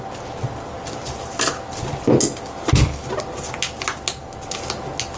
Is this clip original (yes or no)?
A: yes